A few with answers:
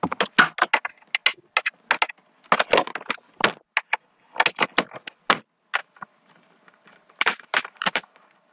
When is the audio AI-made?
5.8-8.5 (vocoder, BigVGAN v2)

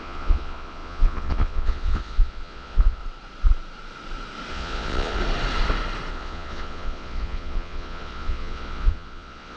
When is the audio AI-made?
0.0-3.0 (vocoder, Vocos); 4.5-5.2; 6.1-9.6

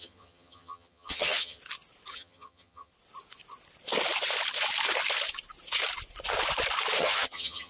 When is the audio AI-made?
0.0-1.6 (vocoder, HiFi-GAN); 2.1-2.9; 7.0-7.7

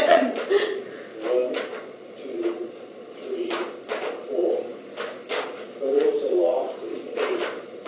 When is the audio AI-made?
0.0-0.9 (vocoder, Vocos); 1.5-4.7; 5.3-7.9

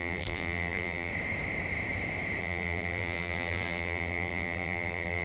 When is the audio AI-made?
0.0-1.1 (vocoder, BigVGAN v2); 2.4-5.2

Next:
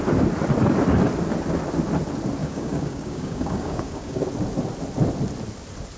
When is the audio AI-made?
2.4-4.2 (codec, DAC)